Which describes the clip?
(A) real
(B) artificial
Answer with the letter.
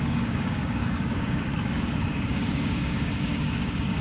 B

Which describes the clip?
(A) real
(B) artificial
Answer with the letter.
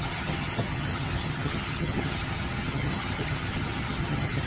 B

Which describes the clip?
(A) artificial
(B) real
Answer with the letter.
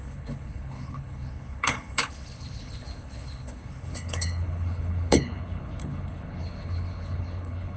A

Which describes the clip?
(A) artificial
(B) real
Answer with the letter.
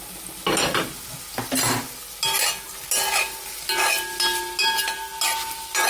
B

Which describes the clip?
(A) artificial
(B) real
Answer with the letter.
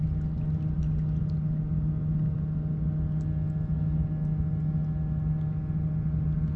B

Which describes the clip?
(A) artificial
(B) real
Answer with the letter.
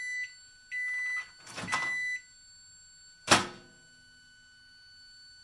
B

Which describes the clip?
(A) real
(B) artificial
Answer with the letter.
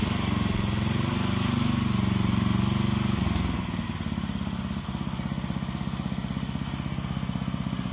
A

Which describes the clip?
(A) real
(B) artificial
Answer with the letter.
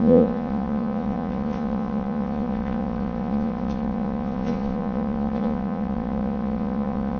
B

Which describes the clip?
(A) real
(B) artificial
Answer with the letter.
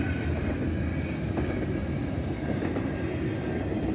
A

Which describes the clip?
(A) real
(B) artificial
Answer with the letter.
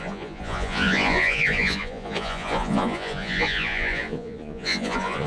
B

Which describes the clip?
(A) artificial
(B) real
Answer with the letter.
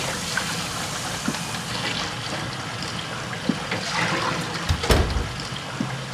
B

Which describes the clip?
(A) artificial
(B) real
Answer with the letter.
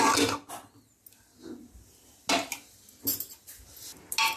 B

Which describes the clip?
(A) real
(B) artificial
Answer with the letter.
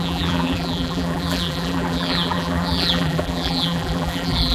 B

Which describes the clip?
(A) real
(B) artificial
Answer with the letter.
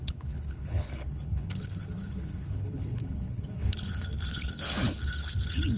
B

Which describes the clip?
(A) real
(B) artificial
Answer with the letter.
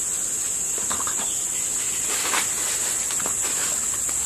A